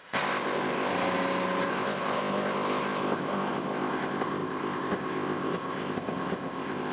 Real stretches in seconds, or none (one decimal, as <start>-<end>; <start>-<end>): 0.9-1.7